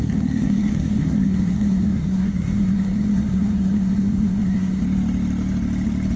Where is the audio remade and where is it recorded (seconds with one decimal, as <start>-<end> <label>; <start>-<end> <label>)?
0.0-4.8 remade; 4.8-6.2 recorded